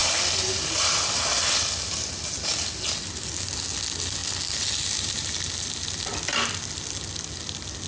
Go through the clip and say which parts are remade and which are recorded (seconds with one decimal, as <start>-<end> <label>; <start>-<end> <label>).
0.0-7.9 recorded